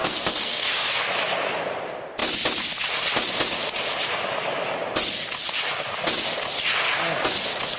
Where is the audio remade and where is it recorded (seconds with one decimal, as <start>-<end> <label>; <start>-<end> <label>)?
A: 0.0-1.0 remade; 1.0-7.8 recorded